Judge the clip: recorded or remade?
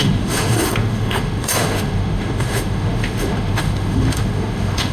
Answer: remade